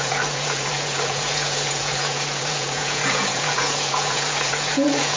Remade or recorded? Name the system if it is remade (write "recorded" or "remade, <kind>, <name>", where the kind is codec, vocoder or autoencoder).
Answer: remade, vocoder, Vocos